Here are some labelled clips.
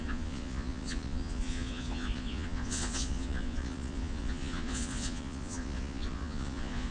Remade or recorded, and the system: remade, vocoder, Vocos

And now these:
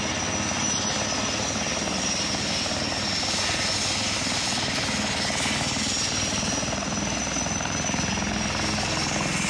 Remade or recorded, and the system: recorded